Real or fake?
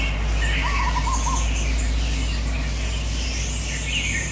real